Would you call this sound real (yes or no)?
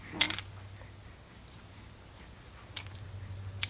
yes